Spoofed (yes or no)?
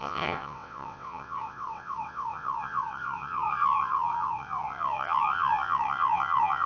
yes